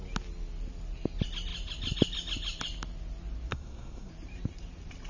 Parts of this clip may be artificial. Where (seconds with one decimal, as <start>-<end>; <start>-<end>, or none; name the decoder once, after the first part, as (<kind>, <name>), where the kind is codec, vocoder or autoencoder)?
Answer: 3.5-4.1 (codec, SNAC)